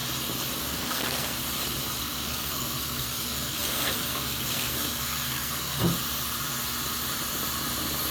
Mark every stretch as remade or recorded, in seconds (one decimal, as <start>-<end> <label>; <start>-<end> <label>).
0.0-0.6 recorded; 0.6-1.4 remade; 1.4-2.0 recorded; 2.0-5.9 remade; 5.9-8.1 recorded